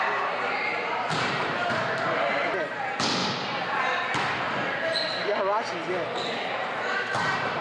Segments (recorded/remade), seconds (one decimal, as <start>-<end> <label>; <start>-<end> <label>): 0.0-3.2 remade; 3.2-6.5 recorded; 6.5-7.6 remade